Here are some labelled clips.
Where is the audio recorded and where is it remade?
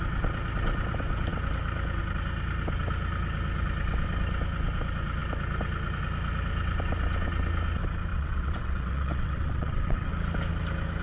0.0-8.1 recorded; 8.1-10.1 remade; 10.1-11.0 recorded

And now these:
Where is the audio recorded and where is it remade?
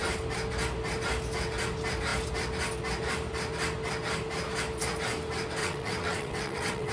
0.0-5.6 recorded; 5.6-6.9 remade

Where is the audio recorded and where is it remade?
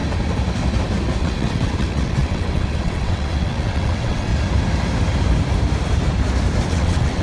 0.0-1.2 recorded; 1.2-4.3 remade; 4.3-6.7 recorded; 6.7-7.2 remade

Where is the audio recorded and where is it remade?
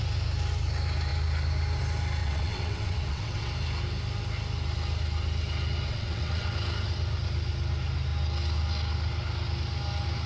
0.0-2.2 recorded; 2.2-3.5 remade; 3.5-5.9 recorded; 5.9-6.5 remade; 6.5-10.3 recorded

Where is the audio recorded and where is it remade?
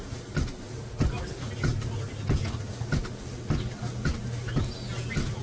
0.0-5.4 recorded